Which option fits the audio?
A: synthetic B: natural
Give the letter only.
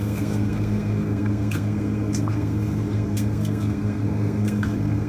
A